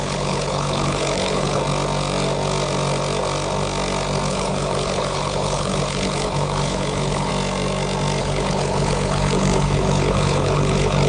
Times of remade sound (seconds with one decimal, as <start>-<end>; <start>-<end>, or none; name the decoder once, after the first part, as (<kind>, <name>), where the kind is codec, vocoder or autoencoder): 0.0-1.6 (codec, HILCodec); 4.3-7.3; 8.2-11.1